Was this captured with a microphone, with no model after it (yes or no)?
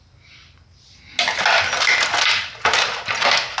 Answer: yes